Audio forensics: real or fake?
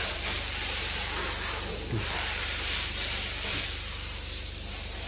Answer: fake